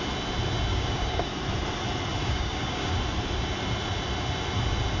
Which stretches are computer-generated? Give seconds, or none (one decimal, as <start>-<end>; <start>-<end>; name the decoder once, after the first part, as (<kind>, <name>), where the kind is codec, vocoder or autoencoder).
0.7-1.3 (codec, DAC); 2.2-2.9